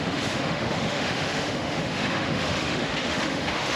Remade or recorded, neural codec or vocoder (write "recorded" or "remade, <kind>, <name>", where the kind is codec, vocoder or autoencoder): remade, autoencoder, DAC-VAE